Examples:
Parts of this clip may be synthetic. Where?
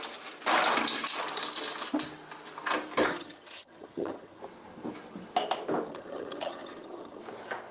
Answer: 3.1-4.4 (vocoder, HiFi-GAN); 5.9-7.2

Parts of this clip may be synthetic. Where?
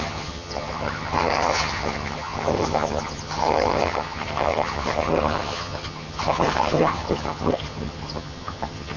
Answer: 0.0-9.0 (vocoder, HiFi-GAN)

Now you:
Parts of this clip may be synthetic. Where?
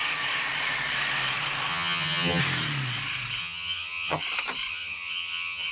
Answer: 1.7-2.4 (vocoder, HiFi-GAN); 3.4-4.2; 4.7-5.7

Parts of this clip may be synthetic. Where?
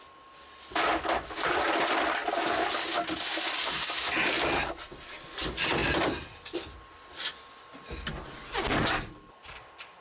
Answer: none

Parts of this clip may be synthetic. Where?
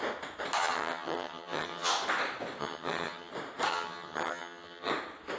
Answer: 0.6-1.9 (vocoder, HiFi-GAN); 2.6-3.3; 3.7-4.9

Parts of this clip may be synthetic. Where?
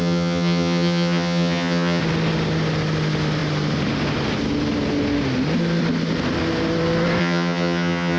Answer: 0.0-2.0 (vocoder, HiFi-GAN); 7.2-8.2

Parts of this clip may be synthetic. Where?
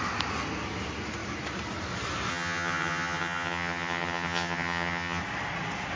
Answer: 2.3-5.2 (vocoder, HiFi-GAN)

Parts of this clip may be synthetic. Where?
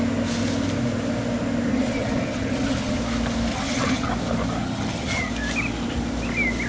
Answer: 1.7-3.0 (vocoder, HiFi-GAN); 3.5-4.1; 4.6-5.3